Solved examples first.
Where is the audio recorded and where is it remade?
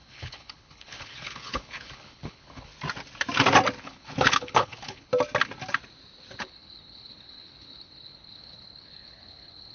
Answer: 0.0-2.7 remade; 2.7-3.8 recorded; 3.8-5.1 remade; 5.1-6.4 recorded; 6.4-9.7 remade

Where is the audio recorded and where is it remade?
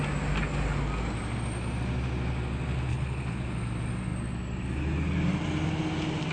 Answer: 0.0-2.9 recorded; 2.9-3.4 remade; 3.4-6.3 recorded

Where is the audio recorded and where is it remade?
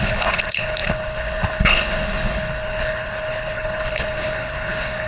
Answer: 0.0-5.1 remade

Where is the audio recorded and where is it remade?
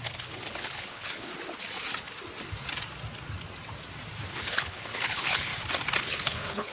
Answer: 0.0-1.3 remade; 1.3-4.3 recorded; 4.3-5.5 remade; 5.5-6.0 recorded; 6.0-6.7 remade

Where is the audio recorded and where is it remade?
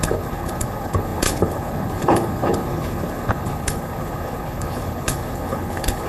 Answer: 0.0-6.1 remade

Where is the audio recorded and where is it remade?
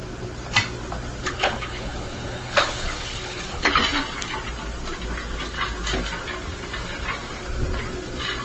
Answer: 0.0-1.2 recorded; 1.2-3.7 remade; 3.7-8.4 recorded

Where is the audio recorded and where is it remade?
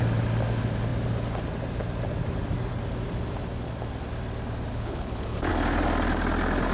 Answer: 0.0-4.7 recorded; 4.7-5.5 remade; 5.5-6.7 recorded